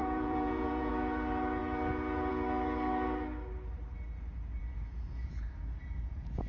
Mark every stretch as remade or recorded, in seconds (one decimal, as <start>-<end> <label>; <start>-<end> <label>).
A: 0.0-0.9 remade; 0.9-4.6 recorded; 4.6-6.5 remade